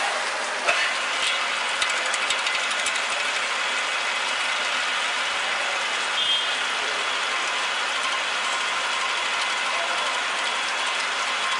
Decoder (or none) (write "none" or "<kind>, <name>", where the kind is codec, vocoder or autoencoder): none